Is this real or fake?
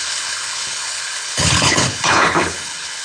fake